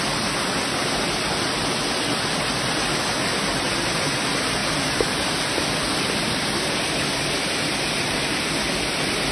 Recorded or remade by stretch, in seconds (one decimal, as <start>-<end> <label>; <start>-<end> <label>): 0.0-9.3 recorded